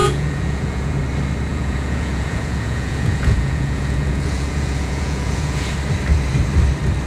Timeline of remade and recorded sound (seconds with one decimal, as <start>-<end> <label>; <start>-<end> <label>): 0.0-1.0 remade; 1.0-1.5 recorded; 1.5-5.7 remade; 5.7-7.1 recorded